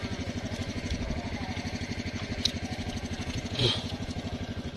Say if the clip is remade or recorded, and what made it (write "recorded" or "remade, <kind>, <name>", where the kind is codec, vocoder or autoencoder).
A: remade, vocoder, Vocos